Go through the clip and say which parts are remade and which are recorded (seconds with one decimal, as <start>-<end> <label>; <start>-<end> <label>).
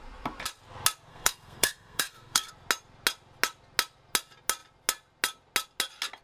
0.0-1.1 recorded; 1.1-2.5 remade; 2.5-6.2 recorded